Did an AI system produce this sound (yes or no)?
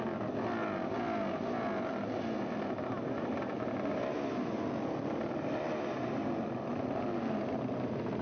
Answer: no